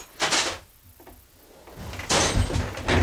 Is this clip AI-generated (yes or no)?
no